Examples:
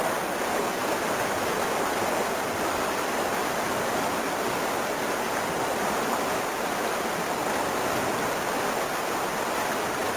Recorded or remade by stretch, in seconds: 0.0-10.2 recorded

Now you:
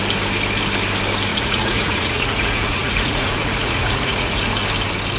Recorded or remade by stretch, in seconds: 0.0-1.3 recorded; 1.3-4.4 remade; 4.4-5.2 recorded